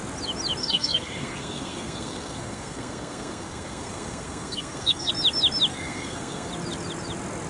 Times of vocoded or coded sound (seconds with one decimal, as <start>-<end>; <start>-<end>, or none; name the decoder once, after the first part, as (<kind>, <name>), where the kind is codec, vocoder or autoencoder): 0.6-5.1 (codec, SNAC); 5.7-6.5